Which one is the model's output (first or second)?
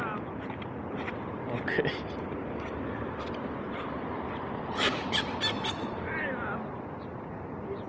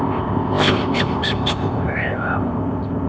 second